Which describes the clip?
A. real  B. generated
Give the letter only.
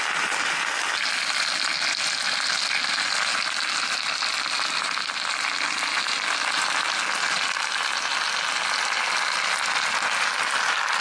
A